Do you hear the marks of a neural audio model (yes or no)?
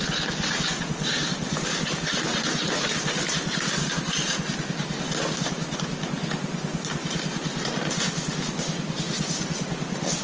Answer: no